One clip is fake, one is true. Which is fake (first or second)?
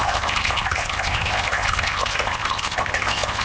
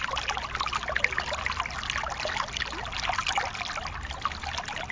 first